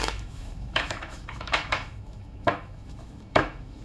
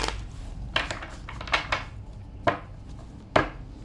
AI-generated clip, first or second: first